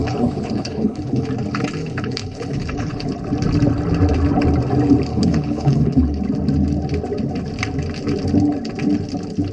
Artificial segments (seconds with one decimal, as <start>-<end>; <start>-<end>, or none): 0.0-1.3; 1.8-3.1; 5.1-6.2